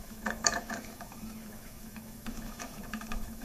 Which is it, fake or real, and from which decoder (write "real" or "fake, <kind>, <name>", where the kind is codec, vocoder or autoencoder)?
fake, autoencoder, DAC-VAE